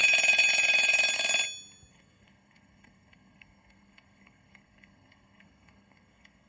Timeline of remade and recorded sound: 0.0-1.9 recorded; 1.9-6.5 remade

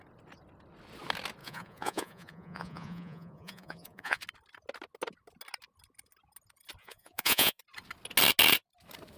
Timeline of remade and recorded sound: 0.0-1.4 recorded; 1.4-4.2 remade; 4.2-6.8 recorded; 6.8-7.6 remade; 7.6-9.2 recorded

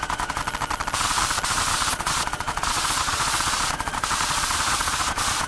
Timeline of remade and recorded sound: 0.0-0.4 remade; 0.4-1.9 recorded; 1.9-5.5 remade

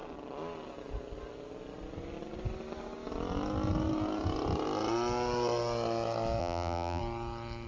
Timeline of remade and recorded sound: 0.0-6.4 recorded; 6.4-7.0 remade; 7.0-7.7 recorded

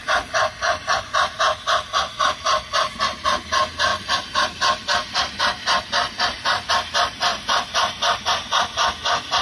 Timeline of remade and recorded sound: 0.0-3.9 recorded; 3.9-6.7 remade; 6.7-9.4 recorded

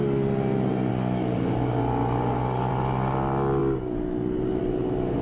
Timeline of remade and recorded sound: 0.0-0.9 recorded; 0.9-2.7 remade; 2.7-5.2 recorded